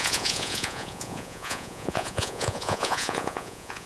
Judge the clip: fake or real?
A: fake